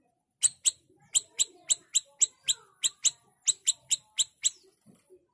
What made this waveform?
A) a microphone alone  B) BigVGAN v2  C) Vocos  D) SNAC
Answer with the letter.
A